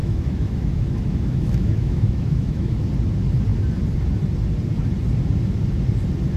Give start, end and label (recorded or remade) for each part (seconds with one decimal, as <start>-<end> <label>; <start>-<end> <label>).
0.0-2.9 remade; 2.9-6.4 recorded